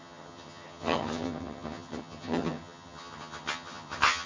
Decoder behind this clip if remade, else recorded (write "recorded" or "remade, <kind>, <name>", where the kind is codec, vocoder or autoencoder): remade, vocoder, HiFi-GAN